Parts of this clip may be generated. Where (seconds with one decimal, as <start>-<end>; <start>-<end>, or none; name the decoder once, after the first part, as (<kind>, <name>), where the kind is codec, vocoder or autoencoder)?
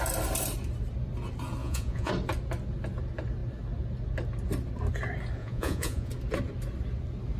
1.6-2.1 (vocoder, Vocos); 5.4-6.1